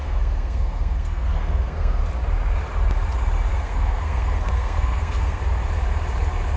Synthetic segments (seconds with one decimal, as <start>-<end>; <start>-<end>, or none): 0.0-2.0; 3.5-5.4